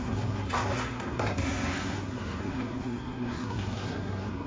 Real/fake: fake